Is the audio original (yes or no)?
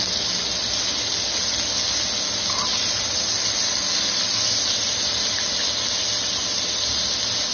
yes